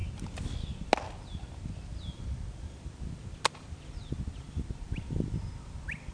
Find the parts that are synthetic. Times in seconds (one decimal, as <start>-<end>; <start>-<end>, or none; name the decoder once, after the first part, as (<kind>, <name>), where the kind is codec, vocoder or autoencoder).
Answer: none